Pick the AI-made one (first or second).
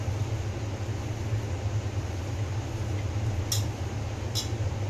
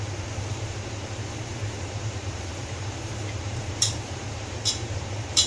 second